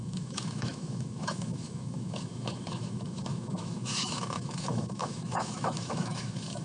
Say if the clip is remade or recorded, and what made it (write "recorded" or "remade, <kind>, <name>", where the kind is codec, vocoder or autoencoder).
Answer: remade, autoencoder, DAC-VAE